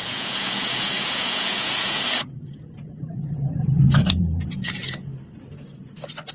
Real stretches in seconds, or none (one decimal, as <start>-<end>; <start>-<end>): 5.1-6.3